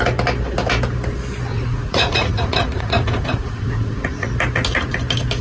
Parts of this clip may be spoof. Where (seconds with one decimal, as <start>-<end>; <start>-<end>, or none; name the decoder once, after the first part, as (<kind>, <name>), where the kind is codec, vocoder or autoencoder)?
1.5-4.3 (vocoder, Vocos)